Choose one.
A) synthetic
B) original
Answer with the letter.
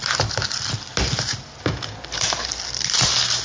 B